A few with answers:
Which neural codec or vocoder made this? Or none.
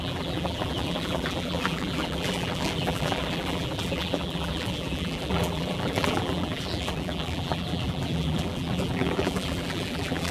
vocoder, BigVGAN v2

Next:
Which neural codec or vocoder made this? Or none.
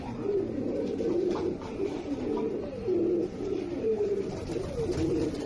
vocoder, BigVGAN v2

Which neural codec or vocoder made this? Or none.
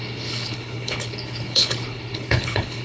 codec, HILCodec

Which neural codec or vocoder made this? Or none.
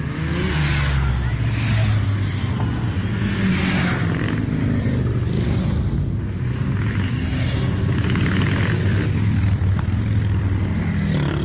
none